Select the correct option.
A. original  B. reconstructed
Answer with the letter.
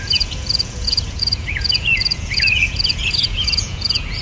B